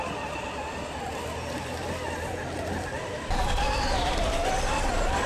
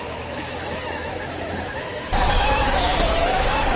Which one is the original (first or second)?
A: first